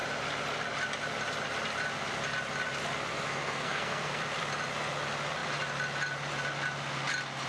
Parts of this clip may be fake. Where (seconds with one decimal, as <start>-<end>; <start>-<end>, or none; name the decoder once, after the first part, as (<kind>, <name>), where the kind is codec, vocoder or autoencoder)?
3.1-4.2 (codec, SNAC)